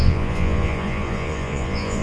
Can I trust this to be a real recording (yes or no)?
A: no